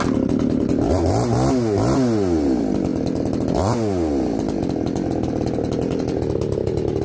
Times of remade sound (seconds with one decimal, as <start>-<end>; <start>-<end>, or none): none